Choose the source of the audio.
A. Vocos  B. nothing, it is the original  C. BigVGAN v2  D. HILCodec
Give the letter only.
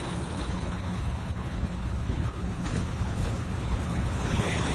D